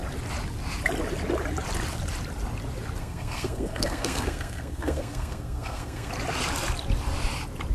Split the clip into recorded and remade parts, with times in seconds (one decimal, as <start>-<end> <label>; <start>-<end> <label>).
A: 0.0-3.0 recorded; 3.0-6.1 remade; 6.1-7.7 recorded